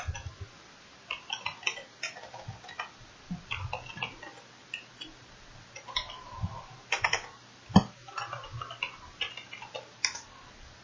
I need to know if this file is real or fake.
real